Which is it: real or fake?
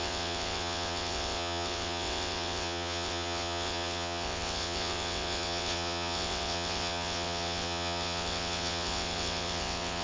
fake